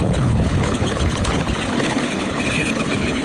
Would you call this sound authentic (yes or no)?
no